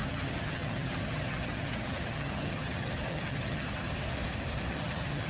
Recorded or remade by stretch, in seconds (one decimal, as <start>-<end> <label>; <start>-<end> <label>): 0.0-3.9 remade; 3.9-4.7 recorded; 4.7-5.3 remade